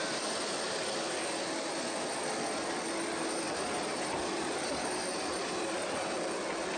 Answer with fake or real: real